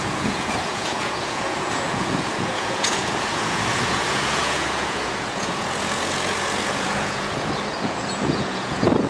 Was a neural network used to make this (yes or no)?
yes